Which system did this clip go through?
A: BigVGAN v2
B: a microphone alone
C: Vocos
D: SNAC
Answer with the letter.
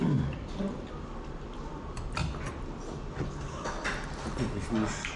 B